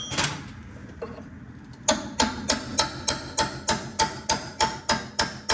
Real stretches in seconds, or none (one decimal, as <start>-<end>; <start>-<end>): 0.0-0.8; 1.4-3.9; 4.8-5.5